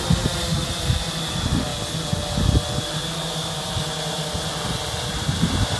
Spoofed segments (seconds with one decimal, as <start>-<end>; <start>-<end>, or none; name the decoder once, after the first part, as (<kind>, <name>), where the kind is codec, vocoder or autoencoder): 0.0-1.7 (vocoder, BigVGAN v2); 2.8-4.5; 5.1-5.8